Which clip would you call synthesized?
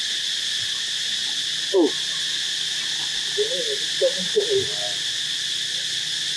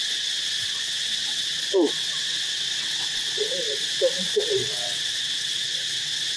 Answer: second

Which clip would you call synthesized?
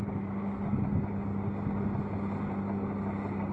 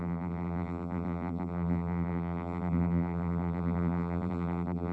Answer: second